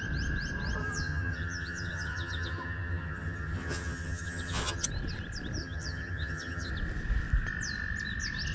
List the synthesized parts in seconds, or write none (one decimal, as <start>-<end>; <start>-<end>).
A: 0.8-4.9; 5.6-6.7